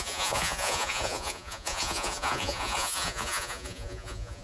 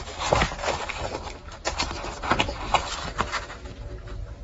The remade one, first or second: first